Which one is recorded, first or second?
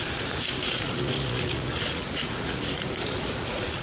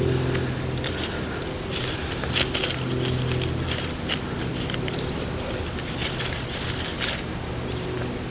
second